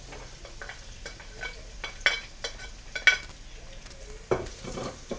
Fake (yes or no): no